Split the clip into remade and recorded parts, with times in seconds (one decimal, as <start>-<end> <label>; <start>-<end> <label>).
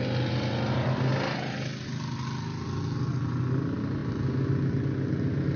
0.0-5.6 recorded